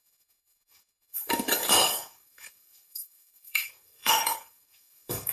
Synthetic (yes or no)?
yes